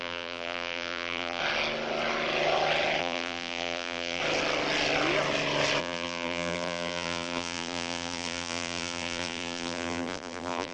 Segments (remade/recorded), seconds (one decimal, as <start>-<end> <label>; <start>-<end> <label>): 0.0-1.4 remade; 1.4-3.0 recorded; 3.0-4.2 remade; 4.2-5.8 recorded; 5.8-10.7 remade